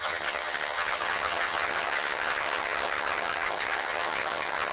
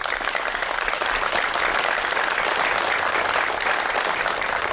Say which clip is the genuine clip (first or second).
second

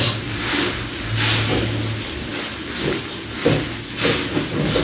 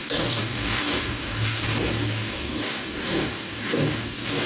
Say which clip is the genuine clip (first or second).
first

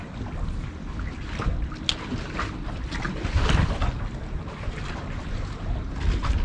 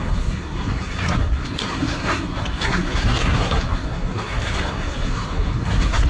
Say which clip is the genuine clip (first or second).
first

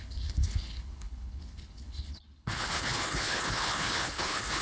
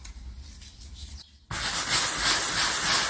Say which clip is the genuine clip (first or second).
second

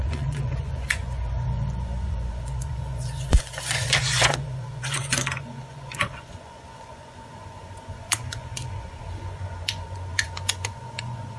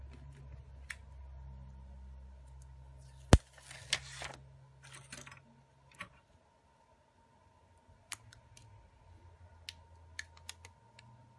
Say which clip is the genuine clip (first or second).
second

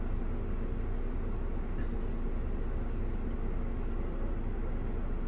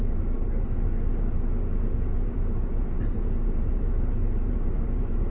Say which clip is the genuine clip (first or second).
first